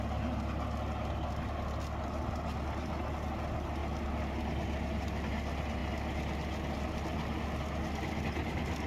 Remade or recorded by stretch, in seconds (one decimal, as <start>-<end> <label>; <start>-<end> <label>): 0.0-8.9 recorded